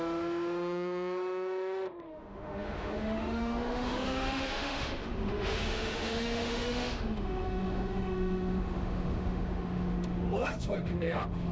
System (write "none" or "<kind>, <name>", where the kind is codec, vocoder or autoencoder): autoencoder, DAC-VAE